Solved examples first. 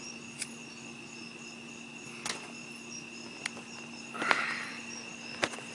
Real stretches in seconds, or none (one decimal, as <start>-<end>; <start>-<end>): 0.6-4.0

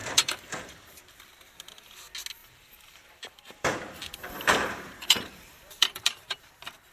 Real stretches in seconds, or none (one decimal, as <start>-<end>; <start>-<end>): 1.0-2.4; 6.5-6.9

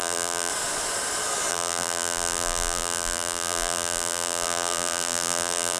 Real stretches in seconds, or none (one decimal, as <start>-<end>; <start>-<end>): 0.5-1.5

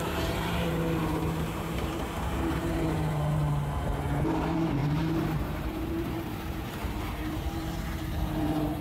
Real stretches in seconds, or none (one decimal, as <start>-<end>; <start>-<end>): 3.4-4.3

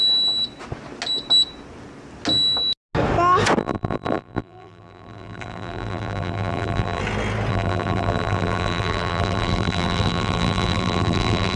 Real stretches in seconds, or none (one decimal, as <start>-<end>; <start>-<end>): 0.0-3.6; 7.0-7.5

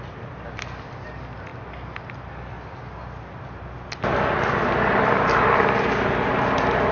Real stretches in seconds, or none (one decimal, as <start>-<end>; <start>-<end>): 0.0-6.9

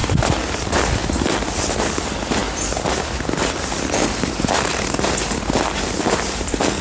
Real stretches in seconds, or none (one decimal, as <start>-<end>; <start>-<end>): 0.0-0.6; 1.0-1.6

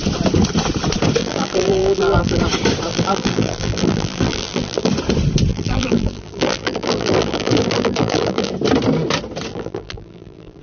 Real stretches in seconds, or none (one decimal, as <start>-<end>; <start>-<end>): 0.0-1.2; 2.4-2.9; 4.9-5.5; 8.5-9.5